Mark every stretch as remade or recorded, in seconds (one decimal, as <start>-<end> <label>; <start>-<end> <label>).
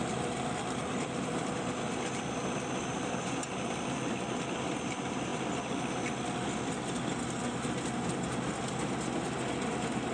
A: 0.0-0.8 recorded; 0.8-3.1 remade; 3.1-10.1 recorded